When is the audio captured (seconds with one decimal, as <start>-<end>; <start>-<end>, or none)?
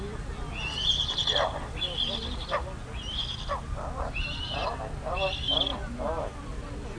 0.0-7.0